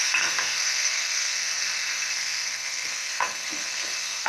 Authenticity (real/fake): fake